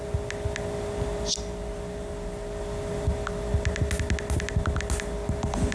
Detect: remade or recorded recorded